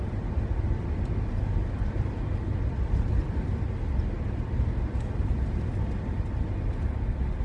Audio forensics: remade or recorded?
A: recorded